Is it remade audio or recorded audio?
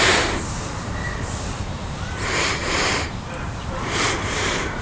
remade